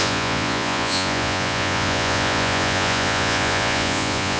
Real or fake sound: fake